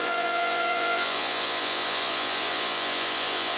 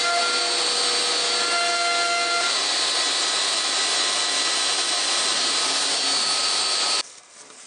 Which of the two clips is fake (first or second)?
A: first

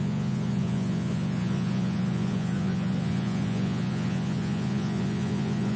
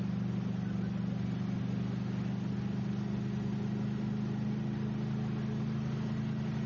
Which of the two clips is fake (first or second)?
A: first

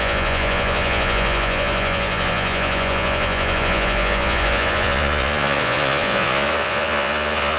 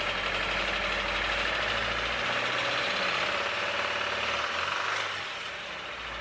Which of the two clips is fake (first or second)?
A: first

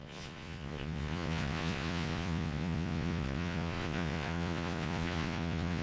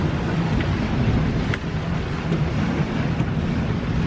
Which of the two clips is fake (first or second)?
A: first